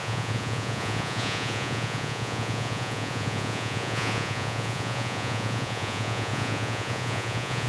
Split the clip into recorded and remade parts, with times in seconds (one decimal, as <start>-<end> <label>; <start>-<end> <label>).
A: 0.0-7.7 remade

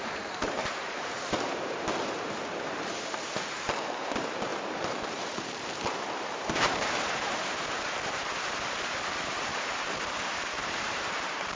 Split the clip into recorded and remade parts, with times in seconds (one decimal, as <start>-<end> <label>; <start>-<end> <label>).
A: 0.0-11.6 remade

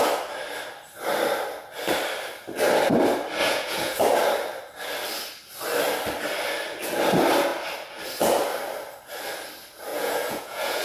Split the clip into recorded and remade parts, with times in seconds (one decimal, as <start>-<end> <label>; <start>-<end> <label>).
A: 0.0-3.4 recorded; 3.4-4.0 remade; 4.0-9.9 recorded; 9.9-10.8 remade

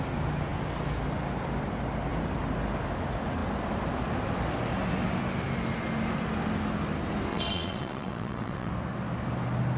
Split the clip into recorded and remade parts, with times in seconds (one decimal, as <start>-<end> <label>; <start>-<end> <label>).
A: 0.0-7.3 recorded; 7.3-8.7 remade; 8.7-9.8 recorded

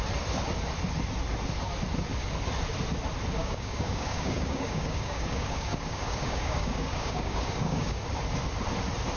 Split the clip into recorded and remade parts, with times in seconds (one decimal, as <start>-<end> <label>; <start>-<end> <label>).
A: 0.0-3.4 recorded; 3.4-8.0 remade; 8.0-9.2 recorded

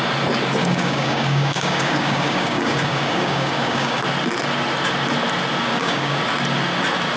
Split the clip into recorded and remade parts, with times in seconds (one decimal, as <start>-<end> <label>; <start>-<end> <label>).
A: 0.0-0.6 recorded; 0.6-4.0 remade; 4.0-5.7 recorded; 5.7-6.2 remade; 6.2-7.2 recorded

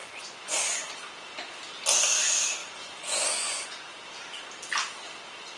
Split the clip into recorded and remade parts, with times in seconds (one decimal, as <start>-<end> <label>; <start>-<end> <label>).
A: 0.0-0.9 remade; 0.9-2.6 recorded; 2.6-3.9 remade; 3.9-5.6 recorded